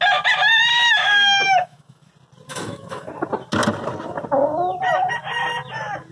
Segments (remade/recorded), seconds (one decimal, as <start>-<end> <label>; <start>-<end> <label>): 0.0-0.7 recorded; 0.7-2.1 remade; 2.1-2.5 recorded; 2.5-3.1 remade; 3.1-6.1 recorded